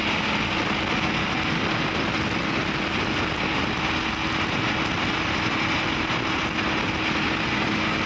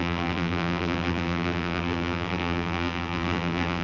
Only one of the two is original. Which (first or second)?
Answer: first